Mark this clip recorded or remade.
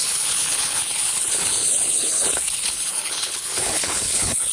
remade